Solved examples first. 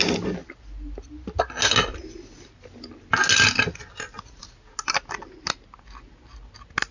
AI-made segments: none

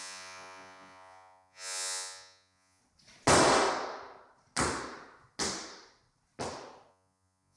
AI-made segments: 0.0-2.8 (vocoder, Vocos); 6.9-7.6

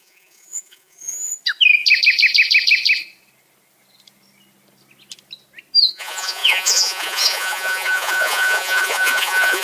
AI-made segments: 0.0-1.3 (vocoder, Vocos); 5.9-9.6